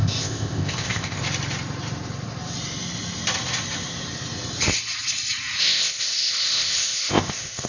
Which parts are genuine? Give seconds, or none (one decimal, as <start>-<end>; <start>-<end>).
1.2-5.6